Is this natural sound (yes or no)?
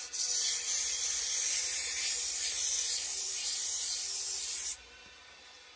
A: no